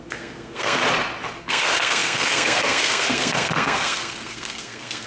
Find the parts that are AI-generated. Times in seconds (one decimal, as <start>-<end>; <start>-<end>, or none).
0.0-0.8; 1.4-5.1